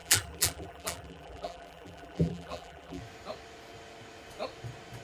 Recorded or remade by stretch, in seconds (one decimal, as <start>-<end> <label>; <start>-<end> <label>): 0.0-3.0 remade; 3.0-5.0 recorded